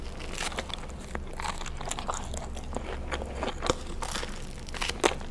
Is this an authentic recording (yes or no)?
yes